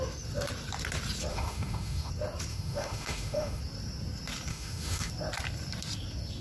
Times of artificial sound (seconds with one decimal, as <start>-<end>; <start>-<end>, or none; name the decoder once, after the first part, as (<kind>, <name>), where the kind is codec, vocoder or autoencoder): 1.3-2.1 (autoencoder, DAC-VAE); 2.5-3.6; 4.5-5.1